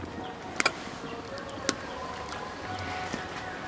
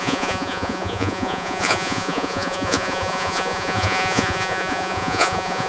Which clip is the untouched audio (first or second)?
first